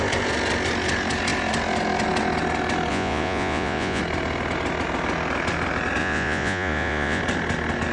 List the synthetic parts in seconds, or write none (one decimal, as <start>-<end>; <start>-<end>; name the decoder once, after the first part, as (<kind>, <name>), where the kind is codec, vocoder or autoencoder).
2.9-4.0 (vocoder, Vocos); 6.0-7.2